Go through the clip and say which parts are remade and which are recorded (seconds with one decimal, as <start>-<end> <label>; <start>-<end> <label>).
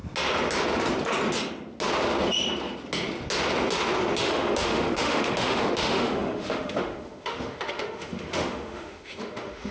0.0-4.2 recorded; 4.2-9.7 remade